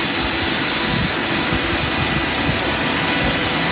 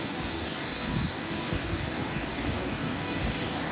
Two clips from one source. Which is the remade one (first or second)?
second